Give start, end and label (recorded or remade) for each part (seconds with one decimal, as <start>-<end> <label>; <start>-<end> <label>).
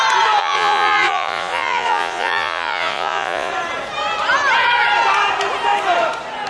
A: 0.0-0.4 recorded; 0.4-3.5 remade; 3.5-6.5 recorded